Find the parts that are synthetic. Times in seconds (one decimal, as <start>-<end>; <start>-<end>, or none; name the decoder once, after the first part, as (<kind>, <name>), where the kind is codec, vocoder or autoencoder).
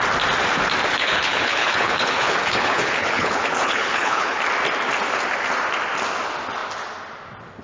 0.9-4.4 (codec, HILCodec)